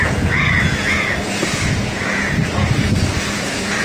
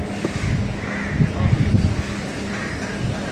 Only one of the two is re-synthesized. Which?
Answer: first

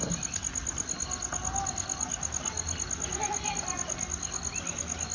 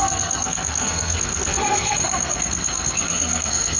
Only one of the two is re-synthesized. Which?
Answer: second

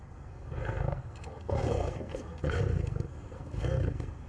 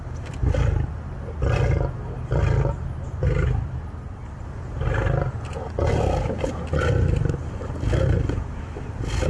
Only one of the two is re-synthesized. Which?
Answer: first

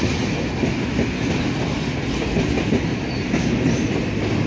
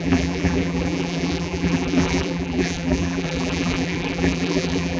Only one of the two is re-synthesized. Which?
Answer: second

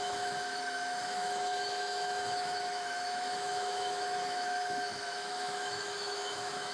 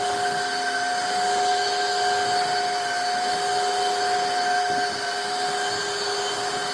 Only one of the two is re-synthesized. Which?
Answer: first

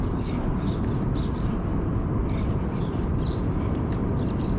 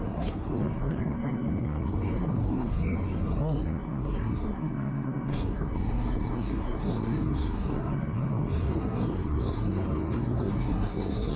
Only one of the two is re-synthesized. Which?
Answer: second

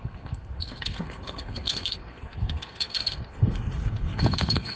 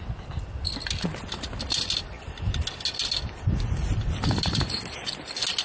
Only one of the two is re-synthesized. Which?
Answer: first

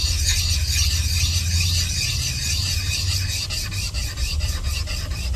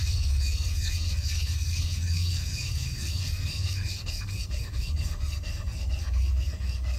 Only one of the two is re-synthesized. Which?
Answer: second